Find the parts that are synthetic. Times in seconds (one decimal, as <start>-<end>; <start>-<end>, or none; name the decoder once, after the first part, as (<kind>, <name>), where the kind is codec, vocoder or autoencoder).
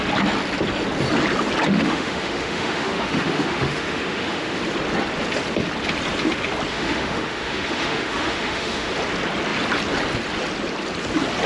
1.7-4.6 (autoencoder, DAC-VAE); 6.7-8.9